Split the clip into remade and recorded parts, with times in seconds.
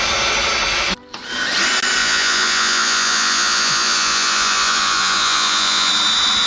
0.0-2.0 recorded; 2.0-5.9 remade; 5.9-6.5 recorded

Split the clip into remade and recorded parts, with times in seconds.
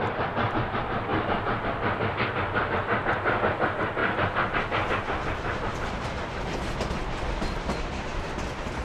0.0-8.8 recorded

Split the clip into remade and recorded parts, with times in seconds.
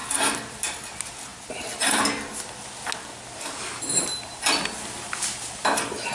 0.0-6.1 recorded